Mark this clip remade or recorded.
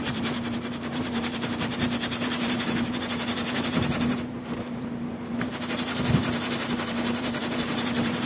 remade